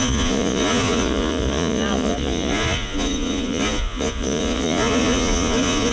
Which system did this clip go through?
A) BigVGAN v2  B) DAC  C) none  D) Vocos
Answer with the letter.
D